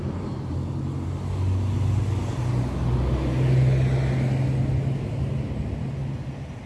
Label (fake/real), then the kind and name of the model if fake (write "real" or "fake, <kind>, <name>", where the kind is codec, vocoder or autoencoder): real